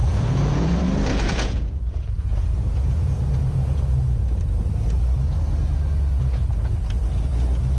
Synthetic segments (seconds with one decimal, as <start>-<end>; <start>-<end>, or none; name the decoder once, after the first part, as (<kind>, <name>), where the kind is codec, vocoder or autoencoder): 0.0-0.7 (vocoder, Vocos); 1.1-4.4